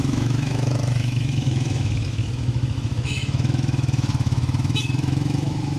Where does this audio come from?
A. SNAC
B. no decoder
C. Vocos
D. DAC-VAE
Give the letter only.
D